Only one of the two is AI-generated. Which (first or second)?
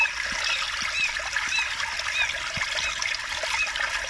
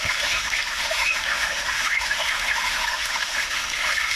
second